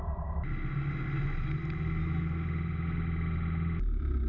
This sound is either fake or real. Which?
real